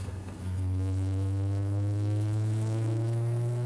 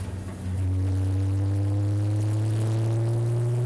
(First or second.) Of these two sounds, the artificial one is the first